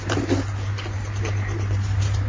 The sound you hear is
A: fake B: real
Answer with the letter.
B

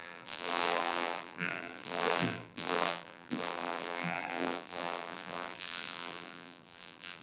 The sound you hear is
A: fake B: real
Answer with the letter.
A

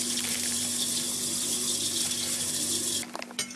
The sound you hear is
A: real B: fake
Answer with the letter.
B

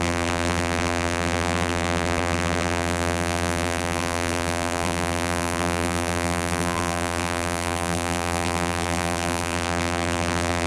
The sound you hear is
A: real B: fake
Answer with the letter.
B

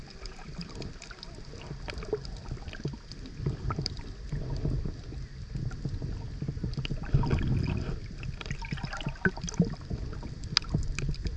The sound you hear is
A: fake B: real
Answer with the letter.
B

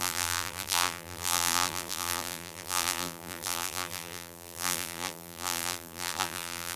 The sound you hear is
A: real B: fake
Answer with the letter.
B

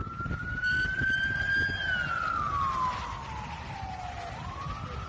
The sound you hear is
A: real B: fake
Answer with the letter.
A